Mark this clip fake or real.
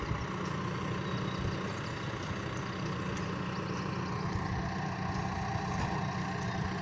real